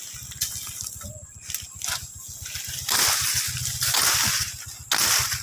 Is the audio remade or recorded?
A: recorded